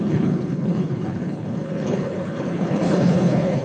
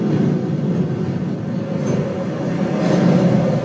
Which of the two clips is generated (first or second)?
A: first